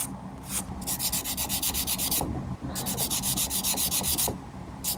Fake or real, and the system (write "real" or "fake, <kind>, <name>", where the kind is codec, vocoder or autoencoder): real